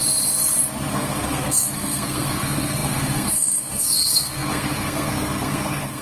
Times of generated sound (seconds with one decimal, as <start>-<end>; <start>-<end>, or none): 0.9-6.0